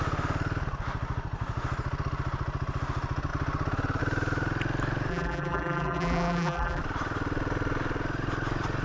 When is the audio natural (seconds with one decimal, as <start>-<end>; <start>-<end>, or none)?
0.0-5.1; 6.8-8.8